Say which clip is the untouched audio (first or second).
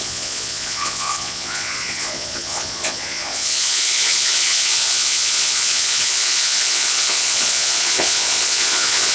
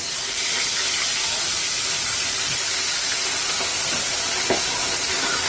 second